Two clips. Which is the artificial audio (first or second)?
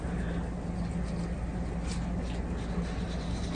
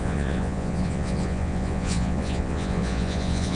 second